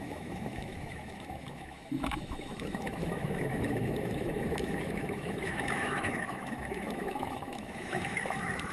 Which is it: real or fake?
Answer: fake